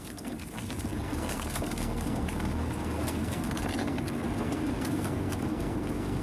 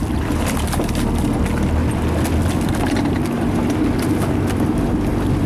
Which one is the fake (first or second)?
first